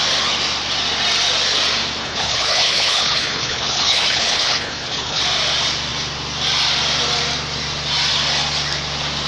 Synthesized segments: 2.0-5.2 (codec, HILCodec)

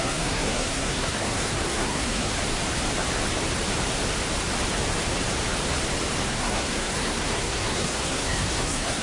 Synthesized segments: 0.0-2.3 (codec, SNAC); 6.3-9.0

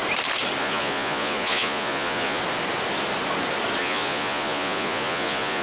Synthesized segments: 0.6-2.4 (vocoder, Vocos); 3.8-5.6

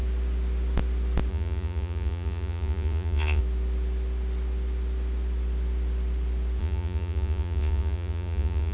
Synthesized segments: 1.3-3.4 (vocoder, Vocos); 6.6-8.7

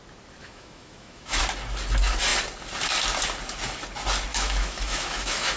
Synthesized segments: 0.4-1.4 (autoencoder, DAC-VAE); 4.3-5.6

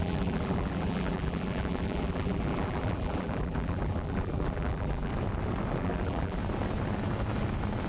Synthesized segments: 0.0-5.1 (vocoder, BigVGAN v2); 5.8-6.4

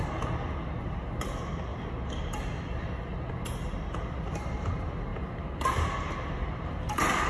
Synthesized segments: none

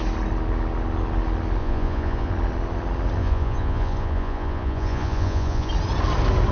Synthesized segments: 1.6-2.3 (vocoder, Vocos); 3.2-5.7